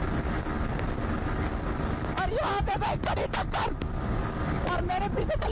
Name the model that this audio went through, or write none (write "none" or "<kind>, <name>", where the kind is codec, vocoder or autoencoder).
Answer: none